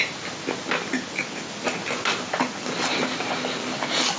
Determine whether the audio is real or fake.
real